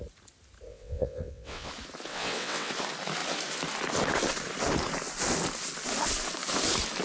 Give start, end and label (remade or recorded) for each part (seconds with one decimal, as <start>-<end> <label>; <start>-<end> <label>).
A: 0.0-0.7 recorded; 0.7-1.7 remade; 1.7-2.1 recorded; 2.1-2.7 remade; 2.7-7.0 recorded

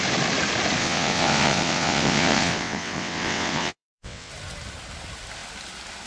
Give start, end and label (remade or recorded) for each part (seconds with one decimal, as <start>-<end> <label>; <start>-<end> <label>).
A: 0.0-0.8 recorded; 0.8-4.3 remade; 4.3-6.1 recorded

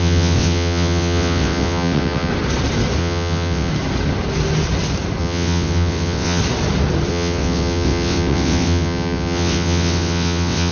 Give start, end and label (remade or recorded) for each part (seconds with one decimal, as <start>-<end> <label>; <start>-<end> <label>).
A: 0.0-2.3 remade; 2.3-3.0 recorded; 3.0-3.7 remade; 3.7-5.2 recorded; 5.2-6.4 remade; 6.4-7.1 recorded; 7.1-10.7 remade